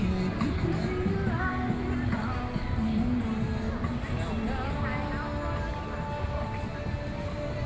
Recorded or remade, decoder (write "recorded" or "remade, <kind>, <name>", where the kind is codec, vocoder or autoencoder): recorded